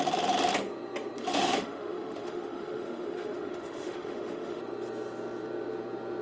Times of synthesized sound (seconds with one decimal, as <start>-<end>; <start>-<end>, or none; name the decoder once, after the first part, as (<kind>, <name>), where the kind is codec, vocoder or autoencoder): 1.3-4.6 (autoencoder, DAC-VAE)